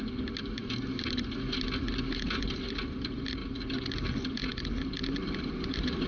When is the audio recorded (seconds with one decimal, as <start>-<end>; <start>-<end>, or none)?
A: 0.0-0.6; 1.2-6.1